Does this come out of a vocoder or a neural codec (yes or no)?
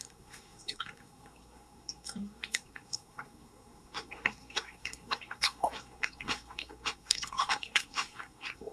yes